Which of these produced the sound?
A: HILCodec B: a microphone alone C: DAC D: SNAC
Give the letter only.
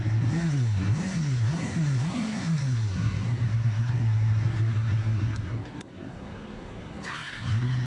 D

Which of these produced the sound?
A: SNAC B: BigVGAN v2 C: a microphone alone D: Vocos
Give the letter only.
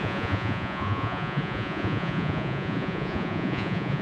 D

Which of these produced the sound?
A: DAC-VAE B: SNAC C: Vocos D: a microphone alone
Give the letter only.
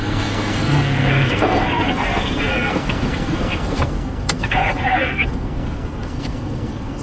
B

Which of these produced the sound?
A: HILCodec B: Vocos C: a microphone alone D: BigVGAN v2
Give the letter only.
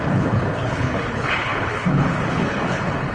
A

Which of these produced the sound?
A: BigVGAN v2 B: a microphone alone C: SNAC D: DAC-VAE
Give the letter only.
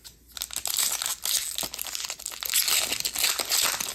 B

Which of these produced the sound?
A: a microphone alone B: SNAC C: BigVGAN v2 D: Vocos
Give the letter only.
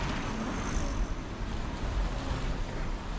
A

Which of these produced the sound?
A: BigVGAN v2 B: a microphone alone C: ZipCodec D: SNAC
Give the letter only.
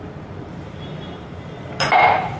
A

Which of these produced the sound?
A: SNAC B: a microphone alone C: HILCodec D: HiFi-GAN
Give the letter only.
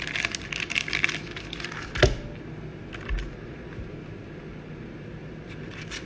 B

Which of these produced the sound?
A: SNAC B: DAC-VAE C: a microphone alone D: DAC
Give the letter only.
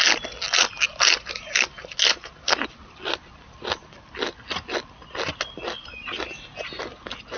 C